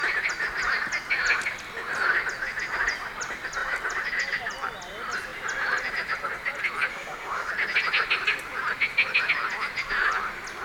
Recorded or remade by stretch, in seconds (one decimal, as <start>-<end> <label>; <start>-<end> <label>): 0.0-6.9 recorded; 6.9-7.5 remade; 7.5-10.6 recorded